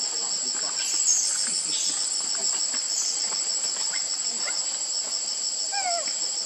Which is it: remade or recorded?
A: recorded